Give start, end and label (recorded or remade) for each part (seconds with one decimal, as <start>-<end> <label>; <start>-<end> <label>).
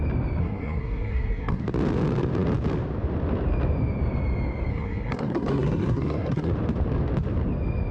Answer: 0.0-0.4 recorded; 0.4-1.6 remade; 1.6-4.7 recorded; 4.7-6.5 remade; 6.5-7.9 recorded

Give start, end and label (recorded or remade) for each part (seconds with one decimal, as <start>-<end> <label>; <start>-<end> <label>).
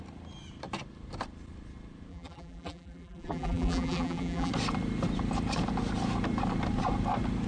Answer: 0.0-2.1 recorded; 2.1-4.5 remade; 4.5-7.5 recorded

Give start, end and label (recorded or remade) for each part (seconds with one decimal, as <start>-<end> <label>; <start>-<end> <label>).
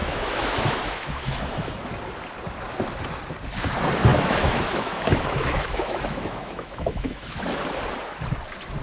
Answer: 0.0-2.0 remade; 2.0-4.1 recorded; 4.1-7.4 remade; 7.4-8.8 recorded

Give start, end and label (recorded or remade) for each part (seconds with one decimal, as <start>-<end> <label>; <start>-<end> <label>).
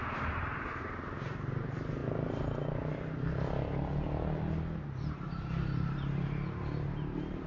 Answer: 0.0-2.0 remade; 2.0-5.2 recorded; 5.2-7.5 remade